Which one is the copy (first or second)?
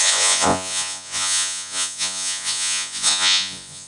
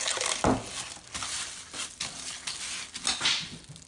first